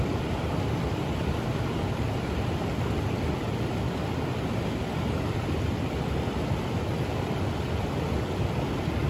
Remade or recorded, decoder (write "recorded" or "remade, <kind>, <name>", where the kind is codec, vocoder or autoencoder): remade, vocoder, BigVGAN v2